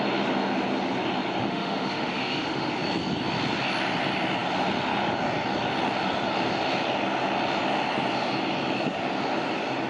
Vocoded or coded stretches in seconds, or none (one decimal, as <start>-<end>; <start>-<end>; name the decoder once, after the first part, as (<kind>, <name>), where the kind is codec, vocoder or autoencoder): 1.4-2.7 (autoencoder, DAC-VAE)